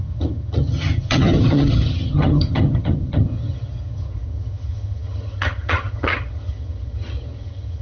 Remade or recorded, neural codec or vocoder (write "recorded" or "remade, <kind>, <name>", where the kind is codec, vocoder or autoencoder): remade, vocoder, HiFi-GAN